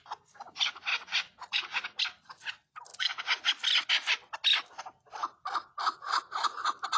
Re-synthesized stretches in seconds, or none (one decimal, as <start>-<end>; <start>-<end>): 0.9-2.0; 2.9-3.5